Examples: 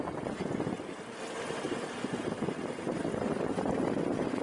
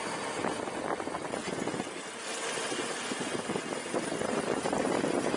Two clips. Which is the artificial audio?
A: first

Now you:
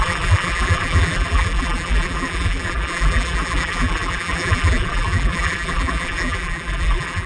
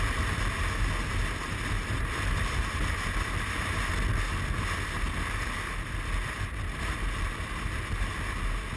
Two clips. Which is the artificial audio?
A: first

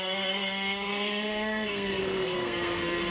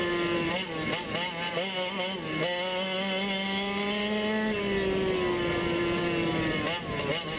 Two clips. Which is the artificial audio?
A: first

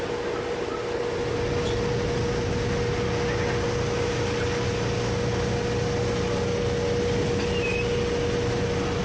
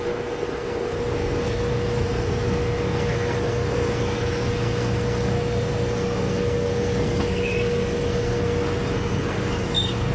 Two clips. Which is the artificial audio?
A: second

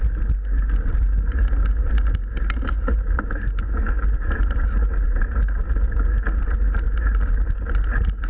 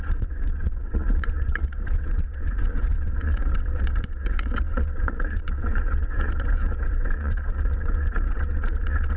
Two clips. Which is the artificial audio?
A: second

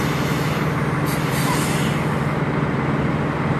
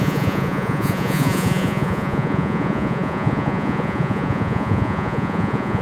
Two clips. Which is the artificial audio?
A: second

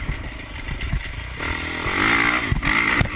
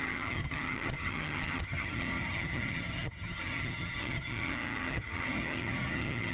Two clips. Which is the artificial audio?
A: second